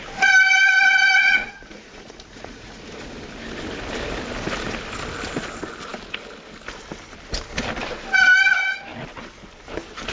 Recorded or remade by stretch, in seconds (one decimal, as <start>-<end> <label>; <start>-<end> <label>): 0.0-1.2 recorded; 1.2-2.8 remade; 2.8-10.1 recorded